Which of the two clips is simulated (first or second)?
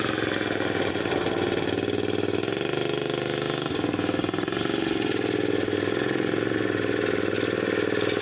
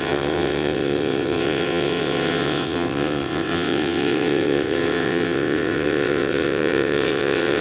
second